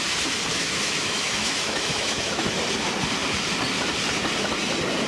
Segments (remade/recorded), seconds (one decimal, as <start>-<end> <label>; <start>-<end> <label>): 0.0-0.5 recorded; 0.5-2.5 remade; 2.5-5.1 recorded

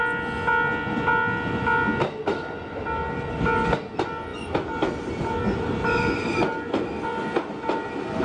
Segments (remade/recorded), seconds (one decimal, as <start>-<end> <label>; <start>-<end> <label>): 0.0-8.2 recorded

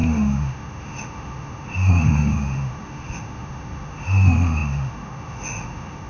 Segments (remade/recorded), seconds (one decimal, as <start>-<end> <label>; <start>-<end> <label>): 0.0-6.1 remade

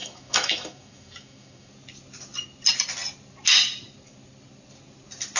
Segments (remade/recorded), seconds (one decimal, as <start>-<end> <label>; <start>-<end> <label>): 0.0-1.7 remade; 1.7-5.4 recorded

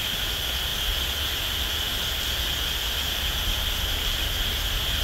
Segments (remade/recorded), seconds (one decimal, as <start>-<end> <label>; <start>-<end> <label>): 0.0-5.0 recorded

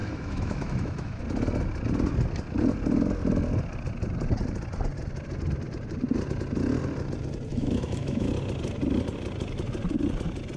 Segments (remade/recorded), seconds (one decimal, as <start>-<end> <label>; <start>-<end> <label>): 0.0-1.2 remade; 1.2-7.5 recorded; 7.5-8.3 remade; 8.3-10.6 recorded

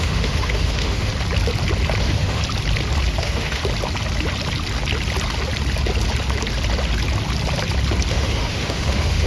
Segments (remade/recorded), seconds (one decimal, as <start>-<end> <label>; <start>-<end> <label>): 0.0-1.1 remade; 1.1-2.0 recorded; 2.0-2.4 remade; 2.4-3.2 recorded; 3.2-3.6 remade; 3.6-8.1 recorded; 8.1-9.3 remade